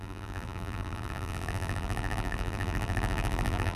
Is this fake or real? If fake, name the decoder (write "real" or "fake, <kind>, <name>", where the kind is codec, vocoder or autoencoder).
fake, vocoder, BigVGAN v2